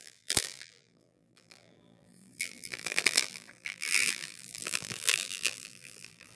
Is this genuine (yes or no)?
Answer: no